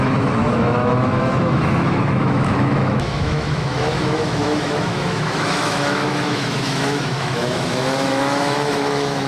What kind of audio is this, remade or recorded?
remade